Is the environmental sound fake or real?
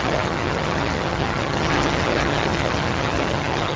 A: fake